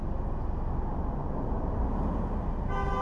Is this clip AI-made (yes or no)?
no